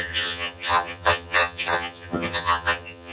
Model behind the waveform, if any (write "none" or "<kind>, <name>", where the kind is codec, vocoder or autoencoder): vocoder, HiFi-GAN